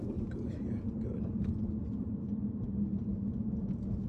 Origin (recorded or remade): recorded